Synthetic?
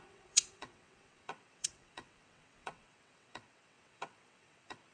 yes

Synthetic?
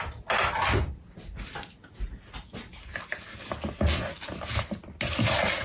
no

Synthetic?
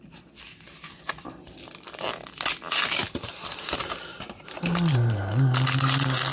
no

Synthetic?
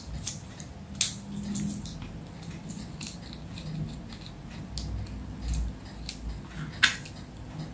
no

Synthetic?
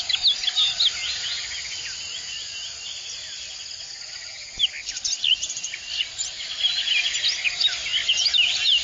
no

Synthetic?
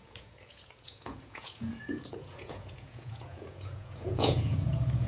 yes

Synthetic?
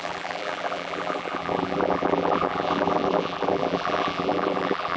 yes